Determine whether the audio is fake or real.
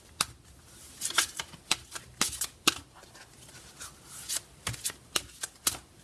real